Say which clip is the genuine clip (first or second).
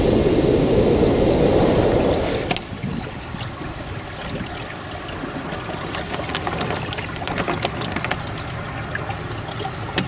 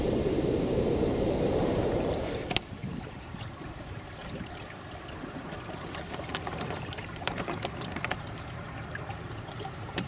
first